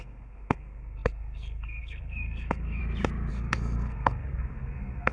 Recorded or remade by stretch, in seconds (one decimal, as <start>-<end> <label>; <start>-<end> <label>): 0.0-2.8 remade; 2.8-3.3 recorded; 3.3-5.1 remade